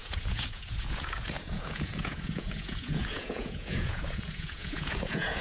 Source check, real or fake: fake